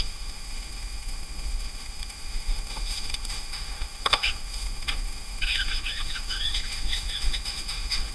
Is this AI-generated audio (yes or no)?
yes